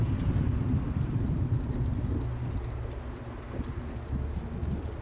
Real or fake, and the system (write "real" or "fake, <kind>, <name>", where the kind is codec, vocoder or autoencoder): real